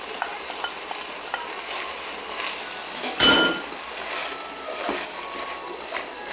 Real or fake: real